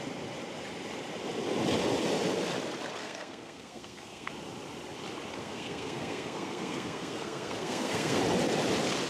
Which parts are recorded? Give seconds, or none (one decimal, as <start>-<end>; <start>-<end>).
0.0-3.0; 4.3-5.4; 8.2-9.1